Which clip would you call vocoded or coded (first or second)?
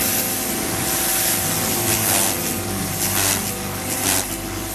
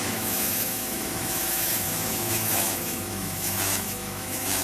second